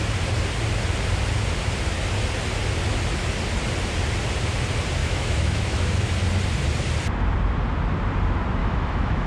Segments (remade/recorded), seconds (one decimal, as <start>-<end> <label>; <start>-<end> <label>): 0.0-5.0 recorded; 5.0-6.1 remade; 6.1-8.6 recorded; 8.6-9.3 remade